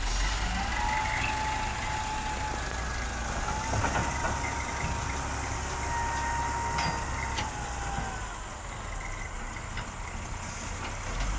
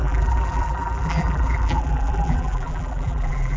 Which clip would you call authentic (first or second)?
first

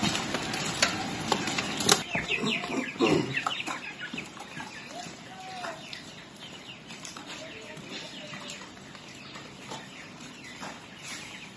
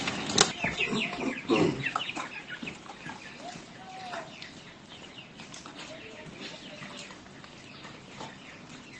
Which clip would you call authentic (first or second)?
second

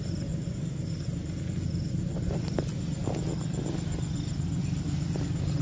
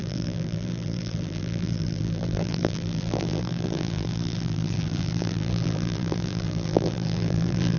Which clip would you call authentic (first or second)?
first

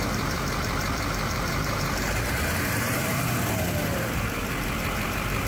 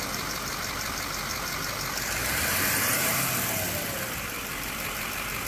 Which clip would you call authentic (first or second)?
second